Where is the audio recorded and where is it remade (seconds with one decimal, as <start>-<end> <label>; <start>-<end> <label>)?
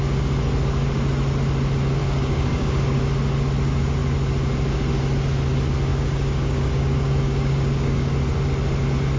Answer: 0.0-2.0 recorded; 2.0-3.0 remade; 3.0-5.9 recorded; 5.9-8.1 remade; 8.1-9.2 recorded